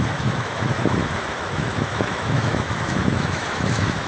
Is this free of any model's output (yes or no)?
no